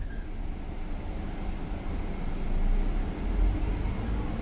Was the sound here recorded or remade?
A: recorded